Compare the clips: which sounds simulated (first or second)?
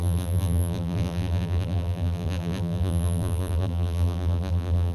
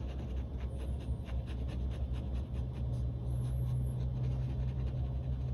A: first